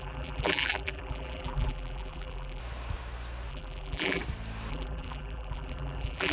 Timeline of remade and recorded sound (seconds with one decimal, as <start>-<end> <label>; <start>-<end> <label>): 0.0-2.6 remade; 2.6-3.5 recorded; 3.5-4.2 remade; 4.2-4.7 recorded; 4.7-6.3 remade